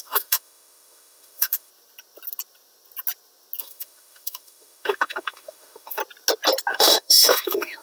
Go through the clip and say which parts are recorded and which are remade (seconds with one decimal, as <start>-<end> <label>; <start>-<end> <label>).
0.0-1.7 remade; 1.7-3.6 recorded; 3.6-6.0 remade; 6.0-6.7 recorded; 6.7-7.8 remade